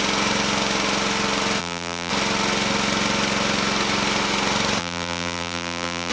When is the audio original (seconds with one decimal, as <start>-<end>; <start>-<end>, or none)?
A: 0.0-1.6; 2.1-4.8